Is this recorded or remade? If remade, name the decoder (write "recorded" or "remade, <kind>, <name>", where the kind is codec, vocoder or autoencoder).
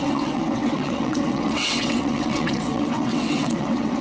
remade, vocoder, WaveNeXt